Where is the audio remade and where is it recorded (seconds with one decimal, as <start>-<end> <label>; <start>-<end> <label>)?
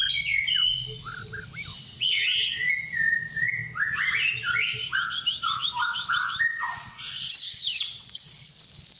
0.0-1.7 recorded; 1.7-2.7 remade; 2.7-6.5 recorded; 6.5-8.5 remade; 8.5-9.0 recorded